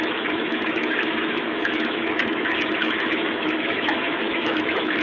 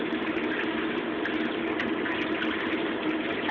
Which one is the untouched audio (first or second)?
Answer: second